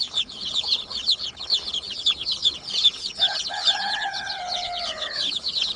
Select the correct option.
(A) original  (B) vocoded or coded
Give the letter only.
B